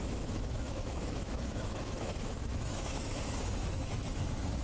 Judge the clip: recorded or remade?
remade